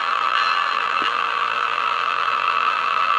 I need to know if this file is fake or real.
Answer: fake